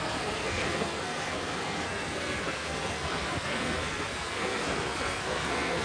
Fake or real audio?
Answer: fake